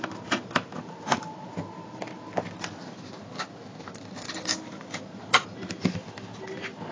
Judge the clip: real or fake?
real